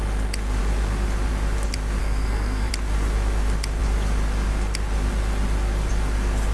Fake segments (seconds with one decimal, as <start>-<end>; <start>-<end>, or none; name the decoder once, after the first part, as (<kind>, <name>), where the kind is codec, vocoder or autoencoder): 2.0-2.7 (codec, SNAC)